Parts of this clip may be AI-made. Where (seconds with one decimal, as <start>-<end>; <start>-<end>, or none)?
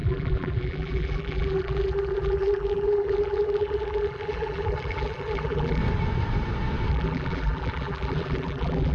0.0-5.8; 6.9-8.9